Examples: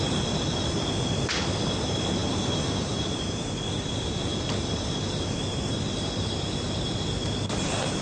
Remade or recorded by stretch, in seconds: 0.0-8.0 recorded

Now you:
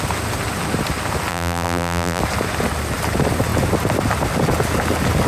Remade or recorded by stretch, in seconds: 0.0-1.3 recorded; 1.3-2.2 remade; 2.2-5.3 recorded

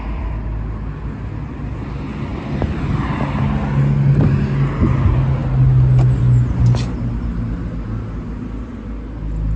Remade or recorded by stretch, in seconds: 0.0-2.3 recorded; 2.3-2.8 remade; 2.8-9.6 recorded

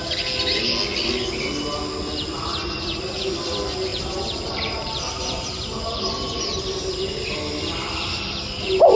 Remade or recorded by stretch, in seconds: 0.0-3.9 recorded; 3.9-7.3 remade; 7.3-9.0 recorded